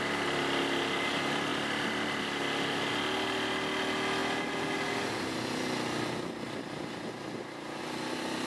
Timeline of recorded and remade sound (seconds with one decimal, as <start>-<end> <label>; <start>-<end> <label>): 0.0-8.5 recorded